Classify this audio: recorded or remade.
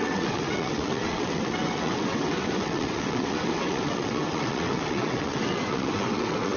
remade